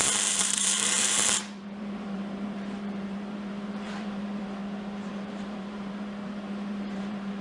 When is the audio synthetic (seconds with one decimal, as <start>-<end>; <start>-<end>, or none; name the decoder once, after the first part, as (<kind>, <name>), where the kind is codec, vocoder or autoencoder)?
0.0-4.6 (vocoder, BigVGAN v2); 5.1-7.4